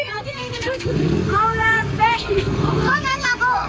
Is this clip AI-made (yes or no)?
yes